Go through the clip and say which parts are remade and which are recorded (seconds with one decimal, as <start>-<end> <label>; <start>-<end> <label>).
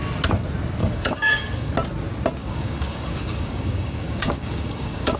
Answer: 0.0-0.8 recorded; 0.8-1.7 remade; 1.7-2.4 recorded; 2.4-5.2 remade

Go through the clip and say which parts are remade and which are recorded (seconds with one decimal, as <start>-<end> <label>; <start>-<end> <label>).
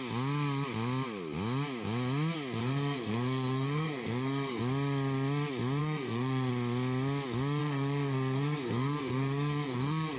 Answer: 0.0-2.6 recorded; 2.6-4.6 remade; 4.6-5.8 recorded; 5.8-6.5 remade; 6.5-7.6 recorded; 7.6-10.2 remade